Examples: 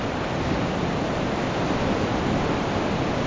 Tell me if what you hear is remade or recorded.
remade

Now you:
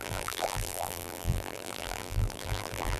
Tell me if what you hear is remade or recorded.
remade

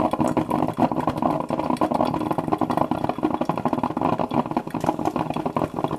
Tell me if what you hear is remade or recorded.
recorded